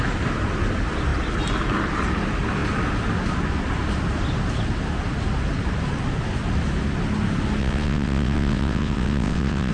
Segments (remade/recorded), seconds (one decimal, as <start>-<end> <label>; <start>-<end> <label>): 0.0-7.6 recorded; 7.6-9.7 remade